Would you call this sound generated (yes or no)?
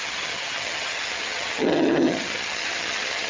yes